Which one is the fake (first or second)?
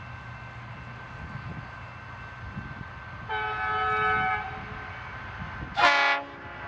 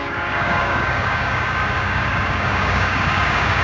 second